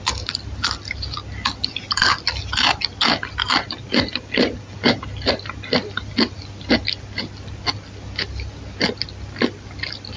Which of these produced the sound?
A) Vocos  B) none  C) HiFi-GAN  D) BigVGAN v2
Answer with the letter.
B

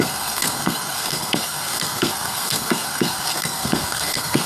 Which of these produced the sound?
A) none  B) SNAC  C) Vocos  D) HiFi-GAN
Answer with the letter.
B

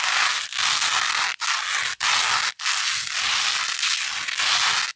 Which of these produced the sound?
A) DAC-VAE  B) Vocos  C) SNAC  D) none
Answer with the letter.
D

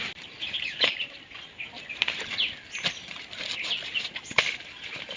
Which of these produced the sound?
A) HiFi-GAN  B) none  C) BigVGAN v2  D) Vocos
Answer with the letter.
B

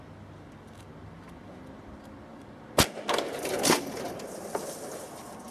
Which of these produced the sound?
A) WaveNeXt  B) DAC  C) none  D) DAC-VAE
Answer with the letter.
C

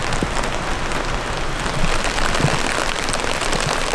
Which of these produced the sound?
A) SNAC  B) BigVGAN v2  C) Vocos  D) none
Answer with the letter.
D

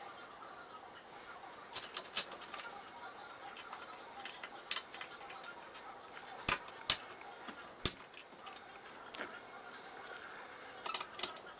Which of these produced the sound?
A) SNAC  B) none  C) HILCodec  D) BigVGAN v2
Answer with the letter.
B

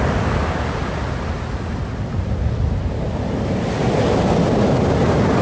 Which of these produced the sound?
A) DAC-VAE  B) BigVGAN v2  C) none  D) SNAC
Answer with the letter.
C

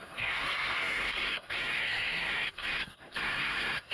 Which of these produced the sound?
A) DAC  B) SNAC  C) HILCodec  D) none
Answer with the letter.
B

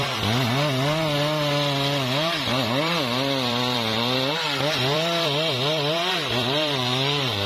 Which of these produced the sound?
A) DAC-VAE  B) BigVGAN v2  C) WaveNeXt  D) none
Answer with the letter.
B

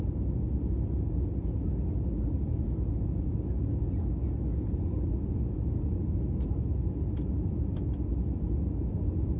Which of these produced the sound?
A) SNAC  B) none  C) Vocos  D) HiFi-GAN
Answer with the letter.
B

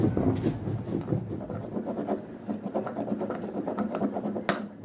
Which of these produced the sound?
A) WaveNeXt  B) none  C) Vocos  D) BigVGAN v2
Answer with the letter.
B